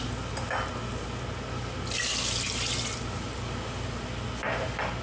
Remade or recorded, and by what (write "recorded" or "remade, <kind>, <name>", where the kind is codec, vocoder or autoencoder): recorded